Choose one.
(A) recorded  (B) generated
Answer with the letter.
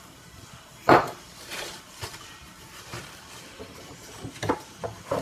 B